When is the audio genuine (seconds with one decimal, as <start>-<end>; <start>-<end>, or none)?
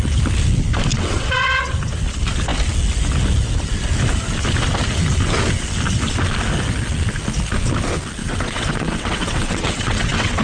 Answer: 0.0-0.9; 1.7-8.2